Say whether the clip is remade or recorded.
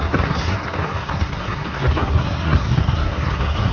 remade